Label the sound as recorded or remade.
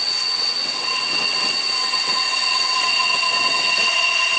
remade